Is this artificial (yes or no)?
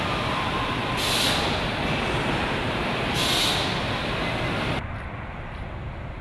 no